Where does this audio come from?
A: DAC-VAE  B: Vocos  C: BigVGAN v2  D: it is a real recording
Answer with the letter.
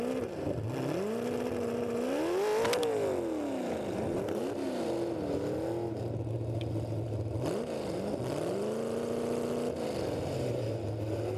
D